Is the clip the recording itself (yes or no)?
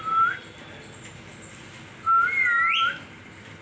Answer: yes